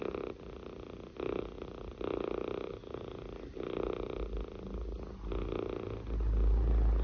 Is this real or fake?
real